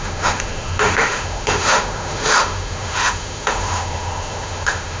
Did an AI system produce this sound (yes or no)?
yes